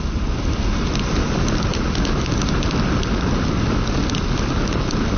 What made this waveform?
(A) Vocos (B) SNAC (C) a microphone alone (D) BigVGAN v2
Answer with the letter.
C